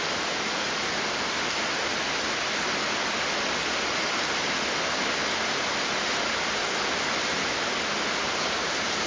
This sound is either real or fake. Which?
real